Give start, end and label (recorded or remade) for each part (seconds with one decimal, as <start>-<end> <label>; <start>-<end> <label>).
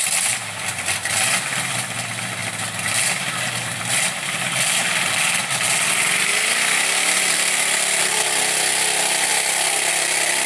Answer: 0.0-2.4 remade; 2.4-3.0 recorded; 3.0-10.5 remade